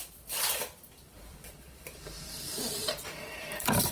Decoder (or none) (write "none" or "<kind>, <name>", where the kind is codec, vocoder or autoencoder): vocoder, BigVGAN v2